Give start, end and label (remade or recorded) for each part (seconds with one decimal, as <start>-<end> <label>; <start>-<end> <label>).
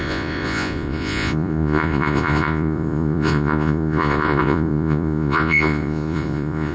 0.0-6.7 remade